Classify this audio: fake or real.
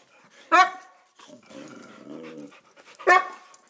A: real